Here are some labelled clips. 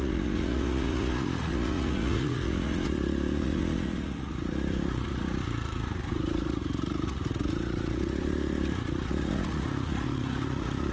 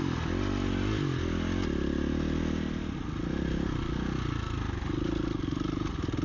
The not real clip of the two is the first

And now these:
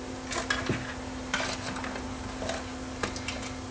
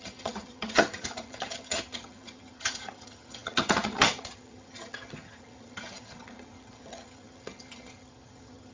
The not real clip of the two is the second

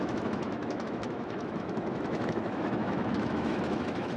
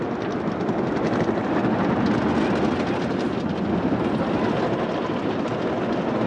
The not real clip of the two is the first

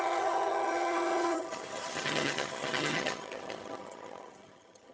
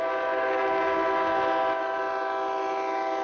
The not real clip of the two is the first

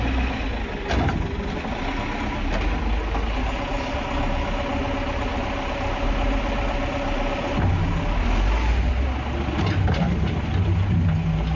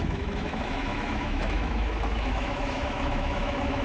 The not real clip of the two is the second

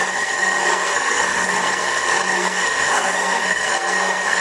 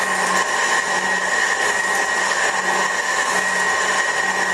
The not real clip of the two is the first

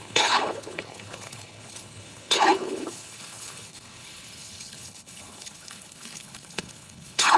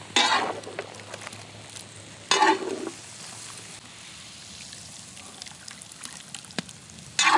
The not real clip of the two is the first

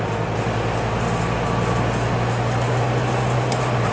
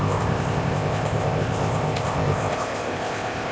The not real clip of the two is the second